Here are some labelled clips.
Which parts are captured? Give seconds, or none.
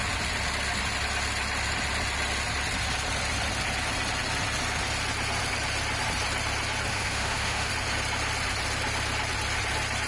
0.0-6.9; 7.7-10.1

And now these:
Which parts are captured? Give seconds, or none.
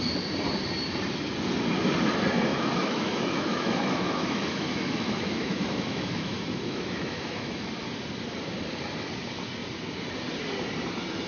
0.0-2.5; 7.7-11.3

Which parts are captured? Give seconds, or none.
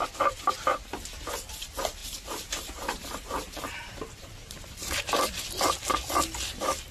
0.0-2.0; 5.3-6.9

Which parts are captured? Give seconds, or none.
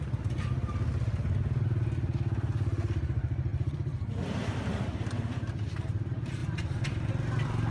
0.0-3.5; 5.9-6.4; 7.1-7.7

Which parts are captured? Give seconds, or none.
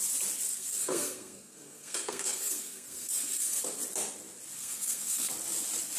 0.0-0.5; 3.6-4.6; 5.3-6.0